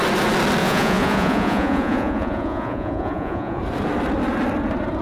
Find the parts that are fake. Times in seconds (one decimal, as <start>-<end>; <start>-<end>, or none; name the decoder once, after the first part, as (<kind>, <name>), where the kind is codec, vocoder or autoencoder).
0.6-3.6 (vocoder, Vocos)